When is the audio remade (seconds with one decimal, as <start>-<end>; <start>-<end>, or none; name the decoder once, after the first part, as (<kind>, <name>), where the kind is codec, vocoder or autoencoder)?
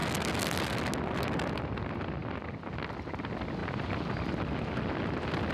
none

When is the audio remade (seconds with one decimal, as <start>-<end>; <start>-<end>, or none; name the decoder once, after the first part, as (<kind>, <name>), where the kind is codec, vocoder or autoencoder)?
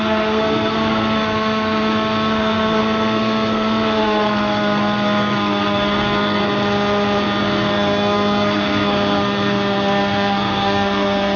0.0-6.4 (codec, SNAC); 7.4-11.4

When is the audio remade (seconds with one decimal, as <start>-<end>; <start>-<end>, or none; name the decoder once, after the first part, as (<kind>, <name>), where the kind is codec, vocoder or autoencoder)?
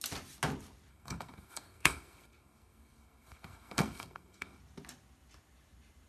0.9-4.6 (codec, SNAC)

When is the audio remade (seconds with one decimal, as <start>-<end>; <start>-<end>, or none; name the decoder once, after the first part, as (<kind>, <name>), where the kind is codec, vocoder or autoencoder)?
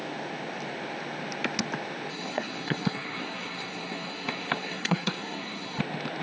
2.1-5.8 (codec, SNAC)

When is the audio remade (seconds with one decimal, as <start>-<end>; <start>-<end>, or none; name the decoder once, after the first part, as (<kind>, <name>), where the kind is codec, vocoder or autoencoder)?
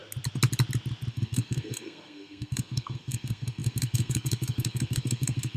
1.1-5.6 (codec, SNAC)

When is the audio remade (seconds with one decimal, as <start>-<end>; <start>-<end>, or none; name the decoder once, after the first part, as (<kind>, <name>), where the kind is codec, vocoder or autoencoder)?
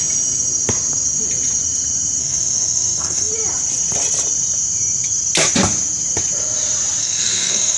2.2-3.3 (codec, SNAC); 7.0-7.8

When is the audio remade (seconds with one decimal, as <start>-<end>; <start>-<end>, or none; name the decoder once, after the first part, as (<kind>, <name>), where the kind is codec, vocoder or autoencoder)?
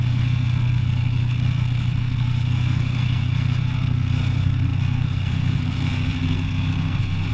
0.0-7.3 (codec, SNAC)